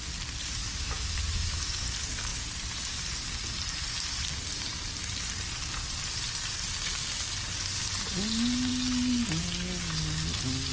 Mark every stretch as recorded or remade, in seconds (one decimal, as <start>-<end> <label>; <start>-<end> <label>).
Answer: 0.0-0.6 recorded; 0.6-1.6 remade; 1.6-10.7 recorded